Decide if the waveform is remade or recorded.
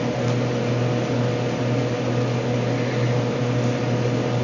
recorded